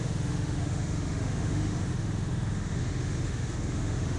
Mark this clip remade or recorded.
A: remade